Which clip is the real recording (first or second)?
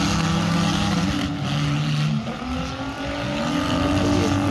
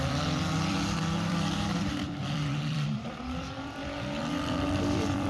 first